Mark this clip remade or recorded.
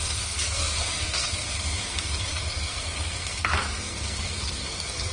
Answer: remade